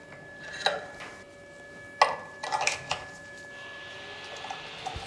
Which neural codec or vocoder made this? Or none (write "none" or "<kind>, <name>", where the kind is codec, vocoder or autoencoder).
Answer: none